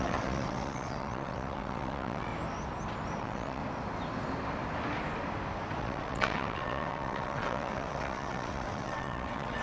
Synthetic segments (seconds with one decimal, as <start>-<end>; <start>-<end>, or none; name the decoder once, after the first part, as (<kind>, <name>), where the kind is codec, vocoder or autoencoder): 0.0-2.3 (vocoder, WaveNeXt); 3.2-3.6; 5.8-9.6